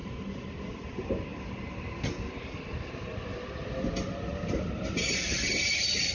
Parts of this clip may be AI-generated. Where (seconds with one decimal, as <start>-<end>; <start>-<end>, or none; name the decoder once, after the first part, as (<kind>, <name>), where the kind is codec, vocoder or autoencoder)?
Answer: none